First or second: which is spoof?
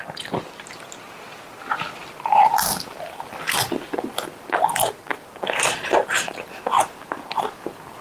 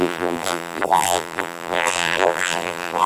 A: second